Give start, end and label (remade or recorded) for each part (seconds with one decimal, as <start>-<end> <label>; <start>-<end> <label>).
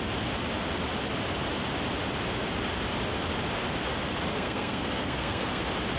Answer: 0.0-4.3 recorded; 4.3-5.6 remade; 5.6-6.0 recorded